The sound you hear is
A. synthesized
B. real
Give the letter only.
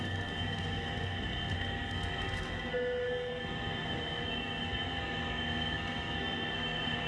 A